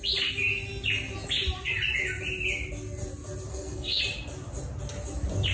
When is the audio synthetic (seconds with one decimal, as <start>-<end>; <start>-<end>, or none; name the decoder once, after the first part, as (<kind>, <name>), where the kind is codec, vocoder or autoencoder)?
3.5-4.0 (codec, SNAC)